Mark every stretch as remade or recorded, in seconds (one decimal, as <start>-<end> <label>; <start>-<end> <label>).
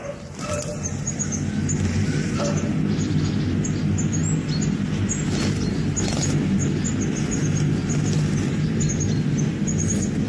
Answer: 0.0-10.3 recorded